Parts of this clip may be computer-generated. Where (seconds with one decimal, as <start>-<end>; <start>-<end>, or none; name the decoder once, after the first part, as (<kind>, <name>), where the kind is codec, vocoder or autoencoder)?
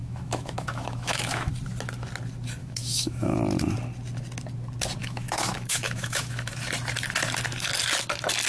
0.0-1.5 (autoencoder, DAC-VAE); 2.6-3.4; 5.0-6.5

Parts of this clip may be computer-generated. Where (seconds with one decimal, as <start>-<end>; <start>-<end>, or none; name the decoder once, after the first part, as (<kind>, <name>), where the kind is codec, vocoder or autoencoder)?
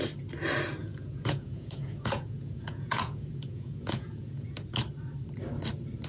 0.8-4.5 (vocoder, Vocos)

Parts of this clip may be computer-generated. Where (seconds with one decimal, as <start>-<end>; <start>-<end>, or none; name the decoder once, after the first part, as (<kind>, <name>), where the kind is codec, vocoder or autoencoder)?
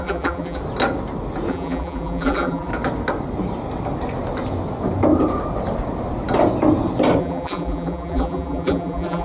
0.0-0.6 (vocoder, BigVGAN v2); 1.5-2.7; 7.2-9.2